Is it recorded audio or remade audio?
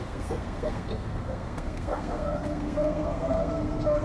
remade